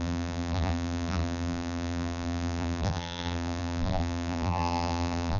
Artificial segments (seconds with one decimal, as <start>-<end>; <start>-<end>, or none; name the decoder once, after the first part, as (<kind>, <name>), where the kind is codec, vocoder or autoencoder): 0.0-5.4 (vocoder, BigVGAN v2)